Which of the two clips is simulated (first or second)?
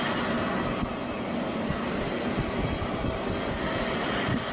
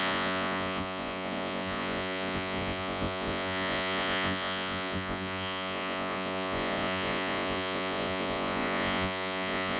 second